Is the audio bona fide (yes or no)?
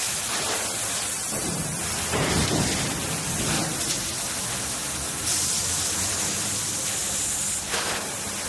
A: yes